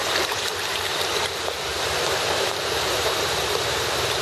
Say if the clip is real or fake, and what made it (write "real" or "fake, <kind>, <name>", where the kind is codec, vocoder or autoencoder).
fake, vocoder, BigVGAN v2